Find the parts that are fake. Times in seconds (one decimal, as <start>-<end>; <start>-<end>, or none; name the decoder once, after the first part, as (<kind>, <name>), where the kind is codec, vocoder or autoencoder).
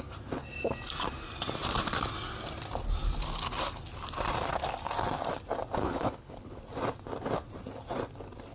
5.8-6.6 (codec, HILCodec)